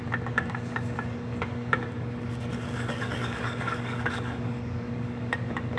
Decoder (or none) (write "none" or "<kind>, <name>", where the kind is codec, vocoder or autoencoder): codec, DAC